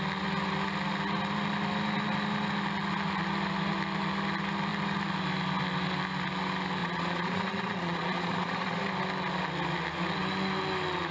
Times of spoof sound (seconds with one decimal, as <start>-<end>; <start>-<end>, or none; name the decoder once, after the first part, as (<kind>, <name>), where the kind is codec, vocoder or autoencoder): 6.8-8.8 (vocoder, Vocos)